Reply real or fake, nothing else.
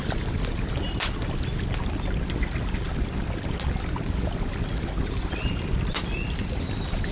real